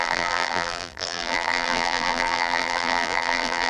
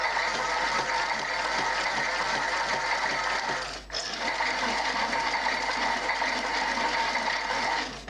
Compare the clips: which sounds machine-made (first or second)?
first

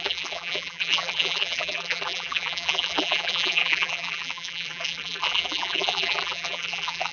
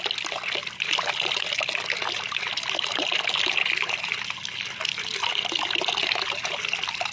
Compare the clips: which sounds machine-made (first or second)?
first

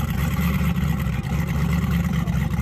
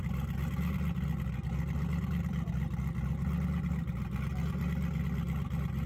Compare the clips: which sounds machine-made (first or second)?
first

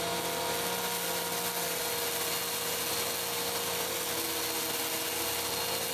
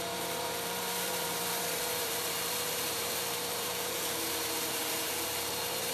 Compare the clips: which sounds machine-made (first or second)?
second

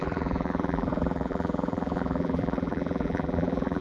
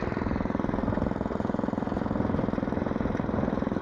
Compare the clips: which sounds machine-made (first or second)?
first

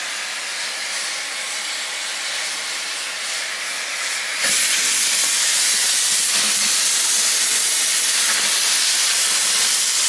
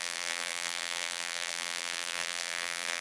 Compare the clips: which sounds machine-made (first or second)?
second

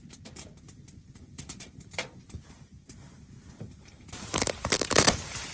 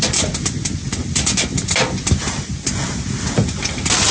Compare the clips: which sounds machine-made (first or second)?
first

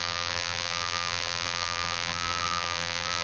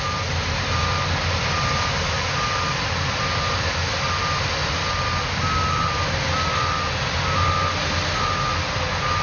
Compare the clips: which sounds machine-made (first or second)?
first